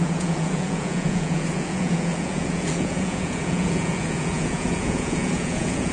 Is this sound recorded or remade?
remade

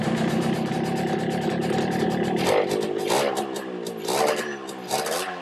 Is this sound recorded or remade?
recorded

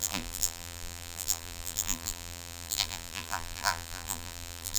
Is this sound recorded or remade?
remade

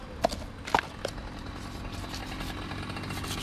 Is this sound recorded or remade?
recorded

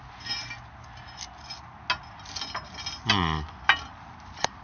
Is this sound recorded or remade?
recorded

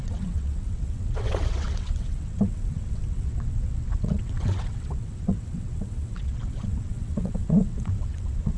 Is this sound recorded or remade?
remade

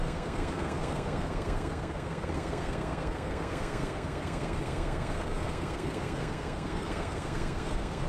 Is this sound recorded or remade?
remade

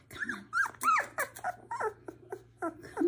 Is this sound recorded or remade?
recorded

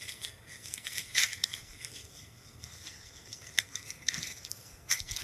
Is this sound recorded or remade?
remade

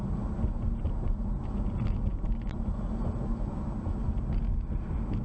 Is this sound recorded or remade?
recorded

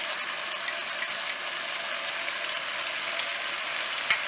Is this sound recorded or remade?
recorded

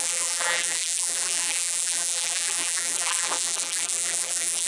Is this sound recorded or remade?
remade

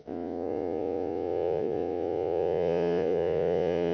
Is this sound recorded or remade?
remade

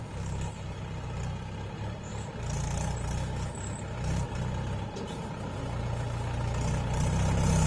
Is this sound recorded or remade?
recorded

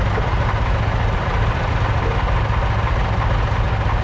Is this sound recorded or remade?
recorded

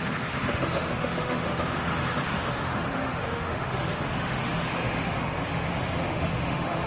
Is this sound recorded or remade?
remade